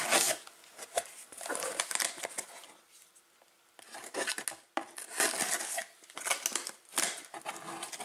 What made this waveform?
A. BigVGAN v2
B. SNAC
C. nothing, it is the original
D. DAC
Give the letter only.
C